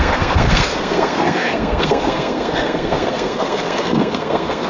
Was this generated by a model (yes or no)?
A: yes